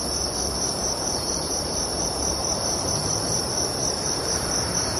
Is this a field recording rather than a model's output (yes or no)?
no